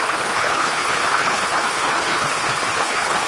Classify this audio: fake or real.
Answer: fake